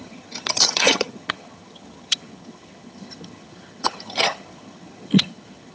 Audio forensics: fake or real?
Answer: fake